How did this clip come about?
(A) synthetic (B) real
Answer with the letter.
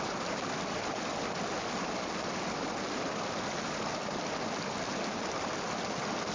B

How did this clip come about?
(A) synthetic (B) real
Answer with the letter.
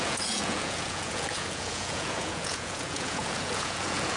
A